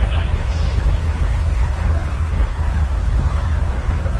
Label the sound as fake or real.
fake